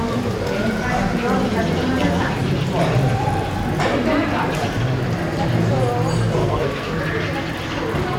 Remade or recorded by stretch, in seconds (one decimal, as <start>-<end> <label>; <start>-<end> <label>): 0.0-6.4 recorded; 6.4-7.0 remade; 7.0-8.2 recorded